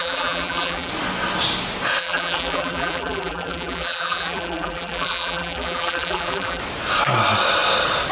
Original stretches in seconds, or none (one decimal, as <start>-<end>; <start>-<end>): 0.9-2.0; 6.6-8.1